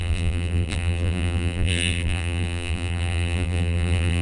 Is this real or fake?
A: fake